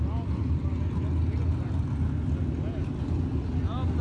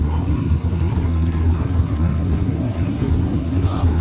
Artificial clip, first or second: second